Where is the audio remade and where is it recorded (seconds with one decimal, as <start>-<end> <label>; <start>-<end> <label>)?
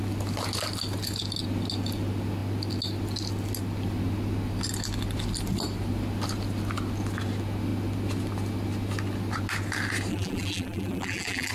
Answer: 0.0-10.1 recorded; 10.1-11.5 remade